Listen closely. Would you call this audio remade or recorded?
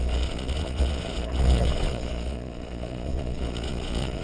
remade